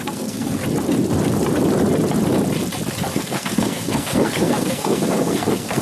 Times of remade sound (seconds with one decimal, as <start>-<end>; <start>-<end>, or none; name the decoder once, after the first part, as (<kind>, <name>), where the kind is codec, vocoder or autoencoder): 0.0-0.6 (codec, SNAC); 3.1-5.8